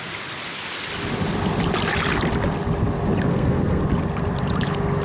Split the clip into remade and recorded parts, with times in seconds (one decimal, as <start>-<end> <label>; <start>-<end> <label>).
0.0-3.3 recorded; 3.3-3.8 remade; 3.8-5.0 recorded